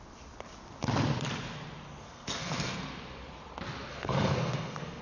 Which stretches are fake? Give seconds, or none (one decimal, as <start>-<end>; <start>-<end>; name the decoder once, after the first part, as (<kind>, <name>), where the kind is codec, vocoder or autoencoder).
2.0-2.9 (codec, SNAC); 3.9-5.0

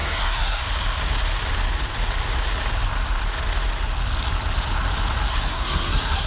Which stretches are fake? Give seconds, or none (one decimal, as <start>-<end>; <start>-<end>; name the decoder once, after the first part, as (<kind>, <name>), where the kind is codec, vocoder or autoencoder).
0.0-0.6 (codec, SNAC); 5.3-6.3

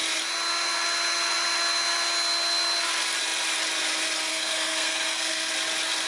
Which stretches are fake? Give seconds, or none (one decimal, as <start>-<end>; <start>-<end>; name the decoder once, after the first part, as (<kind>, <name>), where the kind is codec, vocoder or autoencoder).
4.3-5.5 (codec, SNAC)

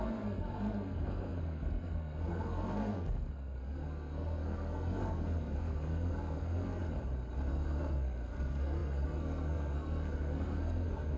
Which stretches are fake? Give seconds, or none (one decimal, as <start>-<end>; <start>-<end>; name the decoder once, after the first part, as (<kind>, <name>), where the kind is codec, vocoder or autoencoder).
0.0-6.8 (codec, SNAC); 7.5-11.2

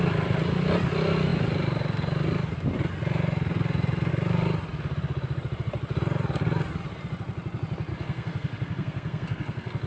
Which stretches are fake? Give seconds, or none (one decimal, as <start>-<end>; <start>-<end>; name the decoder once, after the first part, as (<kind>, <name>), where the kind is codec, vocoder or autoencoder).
7.9-9.9 (codec, SNAC)

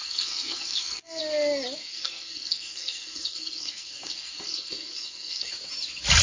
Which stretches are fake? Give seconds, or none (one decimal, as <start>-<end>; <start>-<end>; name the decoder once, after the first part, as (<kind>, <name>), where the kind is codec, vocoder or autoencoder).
0.0-1.2 (codec, SNAC); 1.8-5.5